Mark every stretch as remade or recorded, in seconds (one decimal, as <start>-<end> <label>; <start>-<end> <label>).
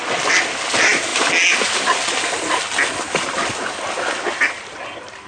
0.0-5.3 recorded